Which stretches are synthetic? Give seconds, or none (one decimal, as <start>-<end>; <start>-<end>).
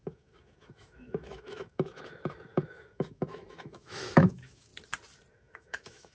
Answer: 0.0-4.7; 5.3-6.1